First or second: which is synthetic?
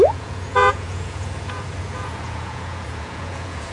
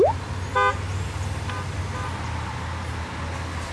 first